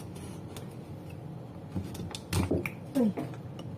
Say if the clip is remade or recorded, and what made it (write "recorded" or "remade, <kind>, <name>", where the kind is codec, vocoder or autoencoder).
recorded